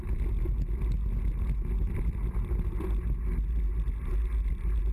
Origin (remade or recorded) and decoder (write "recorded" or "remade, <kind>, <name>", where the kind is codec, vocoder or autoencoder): recorded